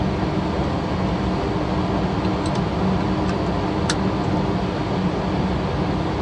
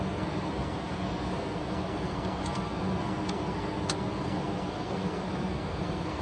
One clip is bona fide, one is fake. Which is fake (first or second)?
second